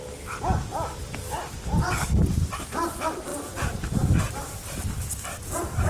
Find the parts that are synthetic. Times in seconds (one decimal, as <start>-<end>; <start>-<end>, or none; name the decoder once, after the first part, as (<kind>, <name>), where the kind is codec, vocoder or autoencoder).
0.7-1.5 (vocoder, BigVGAN v2); 3.3-5.9